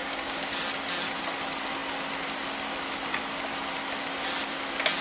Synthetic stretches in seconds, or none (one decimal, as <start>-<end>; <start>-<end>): 0.0-0.5